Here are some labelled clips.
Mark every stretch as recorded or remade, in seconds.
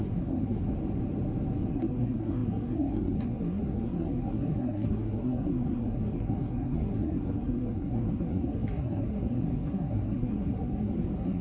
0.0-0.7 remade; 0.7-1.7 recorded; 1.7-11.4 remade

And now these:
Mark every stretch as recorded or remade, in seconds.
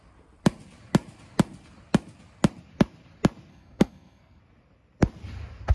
0.0-3.5 recorded; 3.5-4.4 remade; 4.4-5.7 recorded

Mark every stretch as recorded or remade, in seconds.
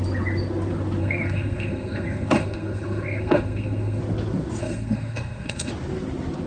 0.0-1.0 recorded; 1.0-4.0 remade; 4.0-4.6 recorded; 4.6-5.7 remade; 5.7-6.5 recorded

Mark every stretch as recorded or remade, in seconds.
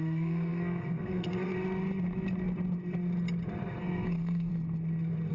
0.0-1.5 remade; 1.5-3.8 recorded; 3.8-4.5 remade; 4.5-5.3 recorded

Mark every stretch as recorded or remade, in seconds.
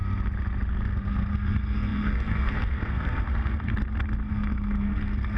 0.0-0.7 recorded; 0.7-3.7 remade; 3.7-4.3 recorded; 4.3-5.4 remade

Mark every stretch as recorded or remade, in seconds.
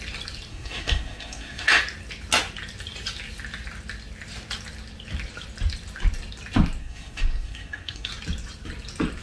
0.0-0.5 recorded; 0.5-1.8 remade; 1.8-6.8 recorded; 6.8-8.1 remade; 8.1-9.2 recorded